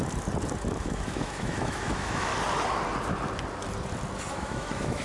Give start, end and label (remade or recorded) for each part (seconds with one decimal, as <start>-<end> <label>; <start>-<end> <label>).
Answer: 0.0-0.7 recorded; 0.7-2.3 remade; 2.3-4.3 recorded; 4.3-5.0 remade